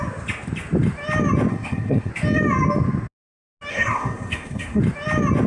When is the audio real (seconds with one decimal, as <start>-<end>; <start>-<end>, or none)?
0.0-1.5; 2.1-3.7; 4.8-5.5